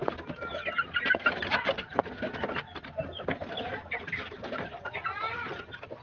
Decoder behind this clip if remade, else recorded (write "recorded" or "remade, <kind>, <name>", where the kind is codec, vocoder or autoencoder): recorded